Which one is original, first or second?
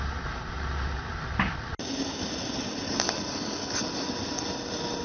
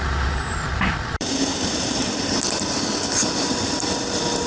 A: first